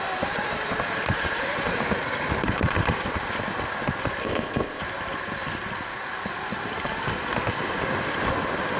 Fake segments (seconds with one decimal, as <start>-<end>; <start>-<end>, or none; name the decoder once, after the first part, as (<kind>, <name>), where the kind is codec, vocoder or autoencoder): 4.2-4.8 (codec, ZipCodec)